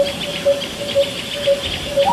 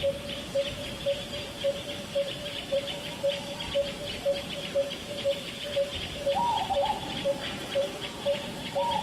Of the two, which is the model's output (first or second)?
second